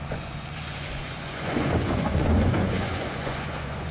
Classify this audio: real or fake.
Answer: fake